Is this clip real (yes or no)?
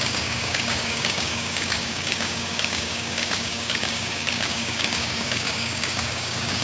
no